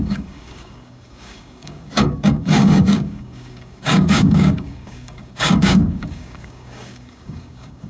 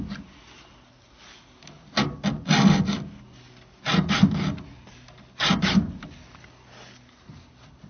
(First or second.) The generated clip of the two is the first